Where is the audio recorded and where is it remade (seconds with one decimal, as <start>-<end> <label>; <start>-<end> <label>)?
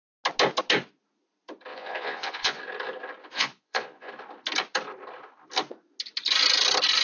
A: 0.0-1.7 recorded; 1.7-2.6 remade; 2.6-3.2 recorded; 3.2-4.1 remade; 4.1-7.0 recorded